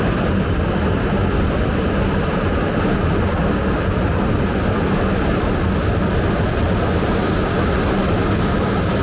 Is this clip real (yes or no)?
yes